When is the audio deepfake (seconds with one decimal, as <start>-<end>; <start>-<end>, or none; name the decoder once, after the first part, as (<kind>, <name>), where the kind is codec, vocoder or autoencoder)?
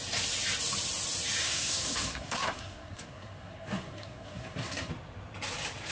1.4-4.9 (codec, SNAC)